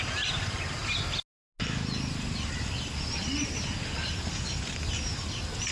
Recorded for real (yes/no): yes